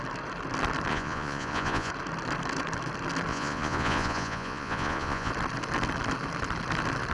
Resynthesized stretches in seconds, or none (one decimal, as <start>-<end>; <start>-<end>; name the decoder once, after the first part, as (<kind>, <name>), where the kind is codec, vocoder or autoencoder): 0.9-1.9 (vocoder, Vocos); 3.3-5.3